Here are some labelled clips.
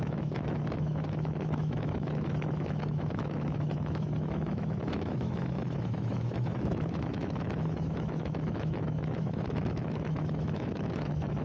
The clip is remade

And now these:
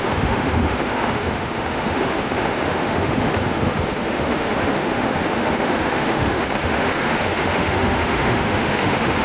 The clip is remade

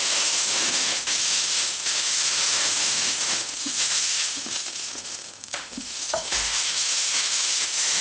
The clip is remade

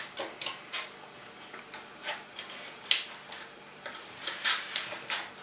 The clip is recorded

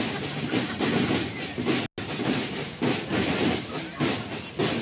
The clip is recorded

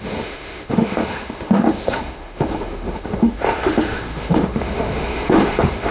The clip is remade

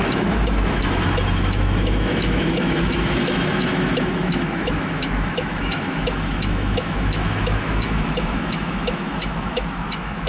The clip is remade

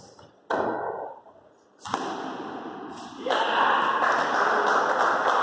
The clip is recorded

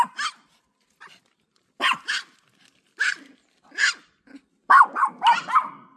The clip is recorded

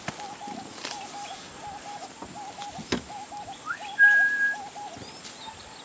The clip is recorded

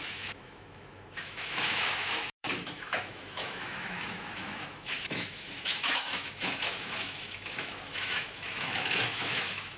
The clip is remade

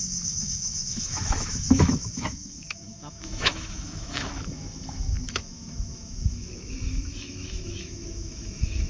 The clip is remade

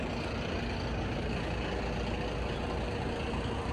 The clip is recorded